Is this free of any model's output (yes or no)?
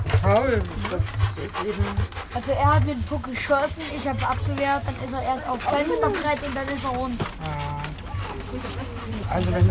yes